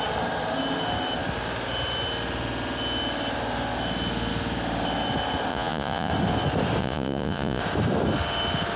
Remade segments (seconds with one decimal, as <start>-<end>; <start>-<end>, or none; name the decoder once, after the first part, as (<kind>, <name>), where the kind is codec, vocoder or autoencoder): 5.5-6.1 (vocoder, Vocos); 6.8-7.6